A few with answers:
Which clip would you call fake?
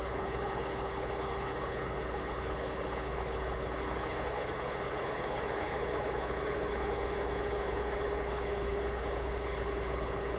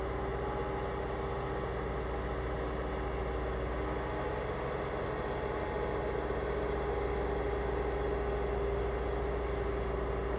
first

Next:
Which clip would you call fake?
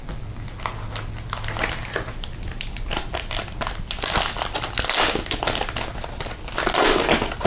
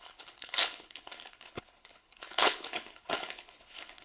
second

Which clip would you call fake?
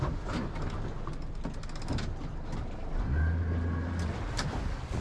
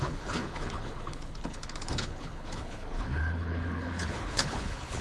second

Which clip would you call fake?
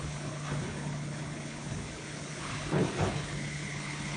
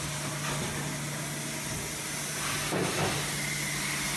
first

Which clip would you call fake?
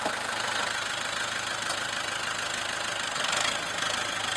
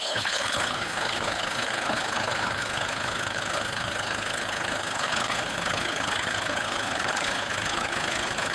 second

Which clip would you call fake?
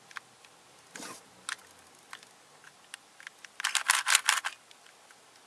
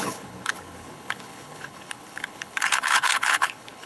second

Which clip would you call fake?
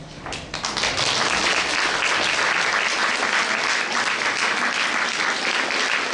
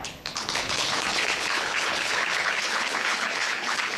second